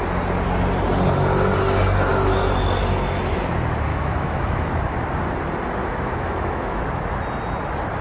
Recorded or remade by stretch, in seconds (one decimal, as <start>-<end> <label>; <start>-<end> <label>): 0.0-3.9 recorded; 3.9-4.6 remade; 4.6-5.8 recorded; 5.8-6.8 remade; 6.8-8.0 recorded